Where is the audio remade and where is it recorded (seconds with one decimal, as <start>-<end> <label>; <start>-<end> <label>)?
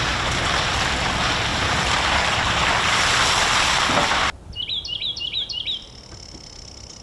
0.0-1.5 recorded; 1.5-3.0 remade; 3.0-7.0 recorded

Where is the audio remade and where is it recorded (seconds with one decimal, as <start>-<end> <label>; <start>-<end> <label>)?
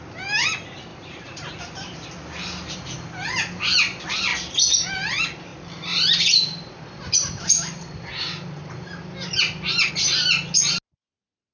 0.0-0.9 recorded; 0.9-2.1 remade; 2.1-11.5 recorded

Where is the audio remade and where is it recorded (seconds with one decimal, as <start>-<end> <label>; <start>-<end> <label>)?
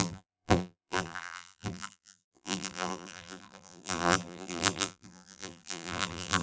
0.0-6.4 remade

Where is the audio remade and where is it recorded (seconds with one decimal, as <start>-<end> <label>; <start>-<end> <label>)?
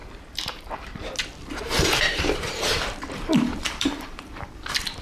0.0-0.6 recorded; 0.6-1.0 remade; 1.0-1.7 recorded; 1.7-5.0 remade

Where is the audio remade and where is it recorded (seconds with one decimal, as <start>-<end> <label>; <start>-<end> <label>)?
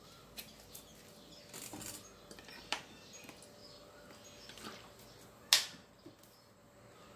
0.0-7.2 recorded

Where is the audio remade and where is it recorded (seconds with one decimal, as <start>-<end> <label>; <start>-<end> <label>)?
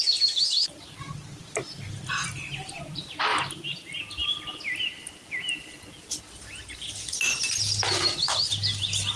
0.0-3.3 remade; 3.3-8.5 recorded; 8.5-9.2 remade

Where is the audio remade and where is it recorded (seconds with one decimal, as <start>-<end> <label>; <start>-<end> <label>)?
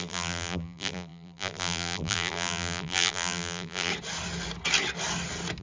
0.0-3.9 remade; 3.9-5.6 recorded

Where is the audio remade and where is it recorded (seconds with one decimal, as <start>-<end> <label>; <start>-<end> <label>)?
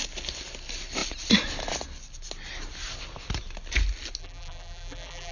0.0-4.2 recorded; 4.2-5.3 remade